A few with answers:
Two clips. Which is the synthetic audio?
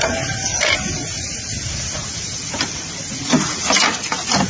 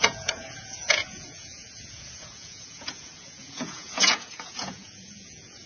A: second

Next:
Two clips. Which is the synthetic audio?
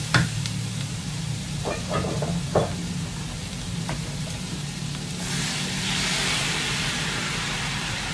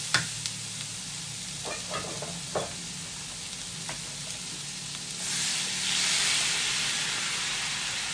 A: first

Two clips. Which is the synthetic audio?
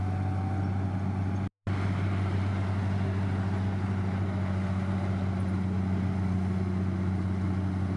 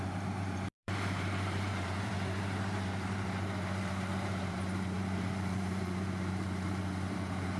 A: second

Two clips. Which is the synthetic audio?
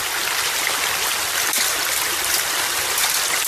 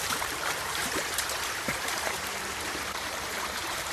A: second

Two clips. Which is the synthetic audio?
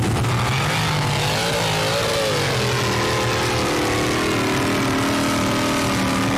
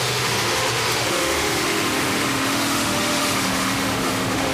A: second